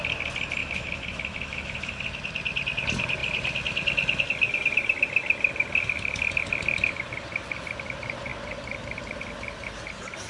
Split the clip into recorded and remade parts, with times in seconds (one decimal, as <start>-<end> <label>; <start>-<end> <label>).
0.0-0.6 recorded; 0.6-1.8 remade; 1.8-10.3 recorded

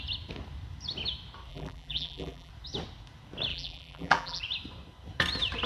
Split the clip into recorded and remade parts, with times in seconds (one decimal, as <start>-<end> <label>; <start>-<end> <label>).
0.0-1.5 recorded; 1.5-2.5 remade; 2.5-3.5 recorded; 3.5-4.4 remade; 4.4-5.7 recorded

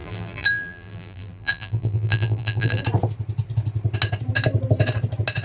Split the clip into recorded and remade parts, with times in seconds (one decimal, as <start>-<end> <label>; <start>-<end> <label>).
0.0-2.8 remade; 2.8-5.4 recorded

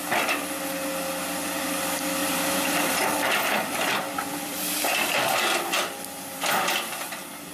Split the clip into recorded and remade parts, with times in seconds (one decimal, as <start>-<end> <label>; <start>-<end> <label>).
0.0-2.2 recorded; 2.2-5.8 remade; 5.8-7.5 recorded

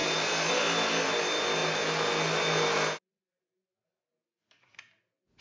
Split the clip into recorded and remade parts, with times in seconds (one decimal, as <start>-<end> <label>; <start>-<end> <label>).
0.0-5.4 recorded

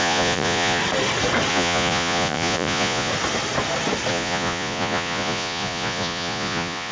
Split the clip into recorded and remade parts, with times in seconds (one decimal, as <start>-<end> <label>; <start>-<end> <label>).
0.0-0.8 remade; 0.8-1.5 recorded; 1.5-3.1 remade; 3.1-4.1 recorded; 4.1-6.9 remade